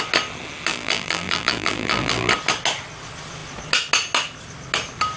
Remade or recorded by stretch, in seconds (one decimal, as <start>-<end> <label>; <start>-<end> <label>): 0.0-0.7 recorded; 0.7-2.3 remade; 2.3-5.2 recorded